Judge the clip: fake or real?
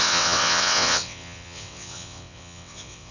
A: fake